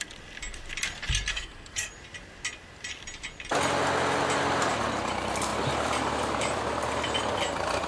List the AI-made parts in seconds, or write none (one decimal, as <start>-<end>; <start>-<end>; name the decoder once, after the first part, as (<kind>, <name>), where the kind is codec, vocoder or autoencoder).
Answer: 1.3-1.9 (codec, SNAC)